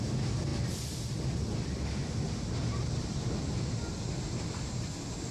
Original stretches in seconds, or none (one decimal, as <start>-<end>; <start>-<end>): 0.0-5.3